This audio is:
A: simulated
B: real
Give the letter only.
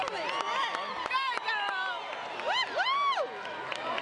A